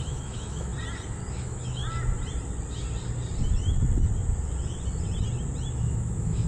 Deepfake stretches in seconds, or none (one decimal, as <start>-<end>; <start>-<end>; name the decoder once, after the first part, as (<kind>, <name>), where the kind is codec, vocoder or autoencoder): 0.0-0.7 (autoencoder, DAC-VAE); 1.3-1.8; 5.7-6.5

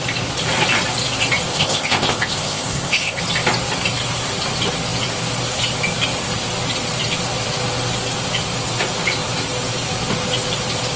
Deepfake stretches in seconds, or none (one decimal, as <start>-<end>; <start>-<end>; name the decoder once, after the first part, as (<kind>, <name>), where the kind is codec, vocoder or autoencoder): 1.5-3.2 (codec, ZipCodec)